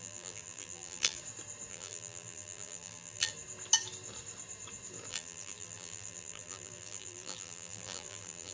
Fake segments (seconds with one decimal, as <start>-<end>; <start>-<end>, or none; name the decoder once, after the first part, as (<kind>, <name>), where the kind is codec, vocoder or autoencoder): 0.0-1.2 (vocoder, BigVGAN v2); 1.7-3.3; 5.1-8.5